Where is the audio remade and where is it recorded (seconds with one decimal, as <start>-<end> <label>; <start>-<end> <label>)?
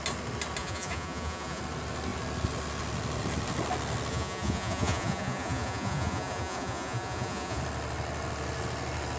0.0-0.6 recorded; 0.6-1.6 remade; 1.6-4.1 recorded; 4.1-7.6 remade; 7.6-9.2 recorded